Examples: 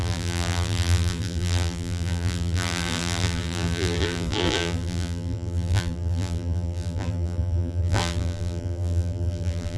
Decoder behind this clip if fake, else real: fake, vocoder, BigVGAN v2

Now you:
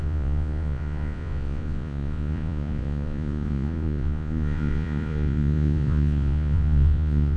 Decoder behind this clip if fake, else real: fake, vocoder, Vocos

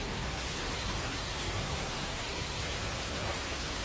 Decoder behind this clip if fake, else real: fake, codec, SNAC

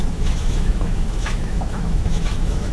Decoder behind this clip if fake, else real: fake, autoencoder, DAC-VAE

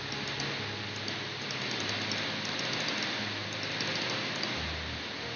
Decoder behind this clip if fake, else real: real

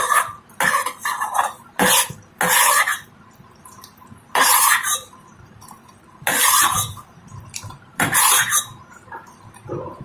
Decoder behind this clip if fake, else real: fake, vocoder, BigVGAN v2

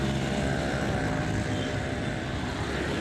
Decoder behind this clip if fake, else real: real